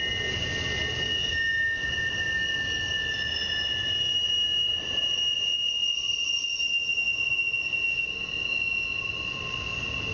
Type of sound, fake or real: real